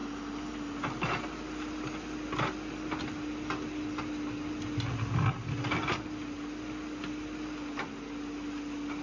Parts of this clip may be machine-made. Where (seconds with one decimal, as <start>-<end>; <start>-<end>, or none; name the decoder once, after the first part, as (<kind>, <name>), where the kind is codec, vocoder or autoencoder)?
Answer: none